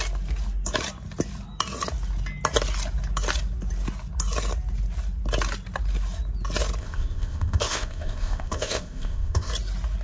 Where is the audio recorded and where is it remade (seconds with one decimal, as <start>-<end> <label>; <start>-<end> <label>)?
0.0-6.8 recorded; 6.8-9.5 remade; 9.5-10.0 recorded